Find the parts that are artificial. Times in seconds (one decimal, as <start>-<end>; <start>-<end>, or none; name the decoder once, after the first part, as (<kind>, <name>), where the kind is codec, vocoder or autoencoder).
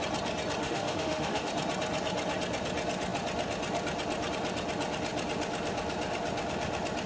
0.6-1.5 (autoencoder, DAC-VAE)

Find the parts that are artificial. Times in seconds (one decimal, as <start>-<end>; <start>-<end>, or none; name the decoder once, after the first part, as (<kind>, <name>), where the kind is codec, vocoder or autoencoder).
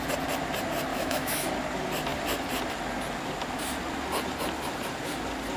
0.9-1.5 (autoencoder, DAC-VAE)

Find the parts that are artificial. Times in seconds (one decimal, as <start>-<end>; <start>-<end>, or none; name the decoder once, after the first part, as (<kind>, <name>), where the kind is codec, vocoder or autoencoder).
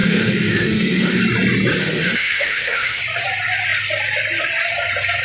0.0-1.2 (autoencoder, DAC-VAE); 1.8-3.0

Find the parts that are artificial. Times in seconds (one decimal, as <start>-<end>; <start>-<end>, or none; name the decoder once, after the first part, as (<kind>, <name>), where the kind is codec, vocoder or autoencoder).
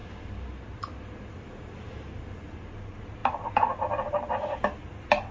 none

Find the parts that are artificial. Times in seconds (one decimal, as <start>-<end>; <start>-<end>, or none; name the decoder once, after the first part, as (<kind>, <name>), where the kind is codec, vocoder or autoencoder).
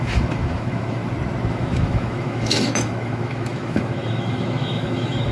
0.0-1.0 (autoencoder, DAC-VAE); 1.5-5.3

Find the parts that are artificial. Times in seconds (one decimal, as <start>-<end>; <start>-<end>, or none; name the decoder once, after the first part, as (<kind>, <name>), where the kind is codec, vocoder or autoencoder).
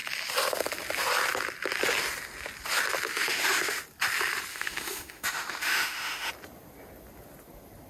3.1-3.8 (autoencoder, DAC-VAE); 4.5-6.3